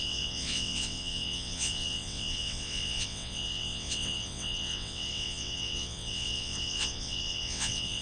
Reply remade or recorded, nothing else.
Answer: remade